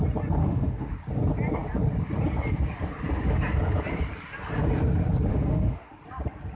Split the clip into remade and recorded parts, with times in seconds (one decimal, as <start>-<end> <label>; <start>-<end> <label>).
0.0-0.4 recorded; 0.4-0.9 remade; 0.9-5.3 recorded; 5.3-5.9 remade; 5.9-6.5 recorded